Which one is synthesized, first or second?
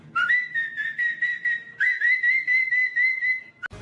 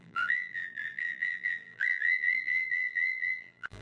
second